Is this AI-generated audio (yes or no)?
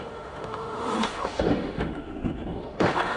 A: yes